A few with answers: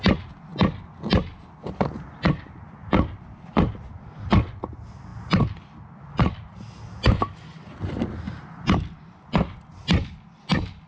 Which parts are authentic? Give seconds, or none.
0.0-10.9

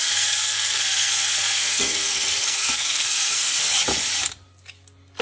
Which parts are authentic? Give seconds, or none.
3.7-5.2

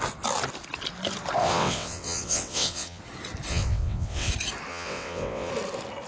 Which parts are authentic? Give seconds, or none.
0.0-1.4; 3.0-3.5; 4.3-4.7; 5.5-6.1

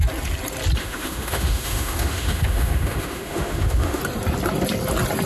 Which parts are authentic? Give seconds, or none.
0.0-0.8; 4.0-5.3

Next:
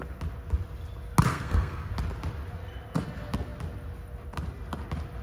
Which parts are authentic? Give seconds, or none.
0.0-1.3; 1.9-5.2